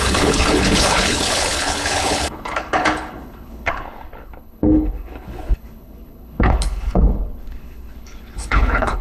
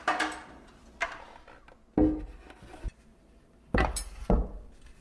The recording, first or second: second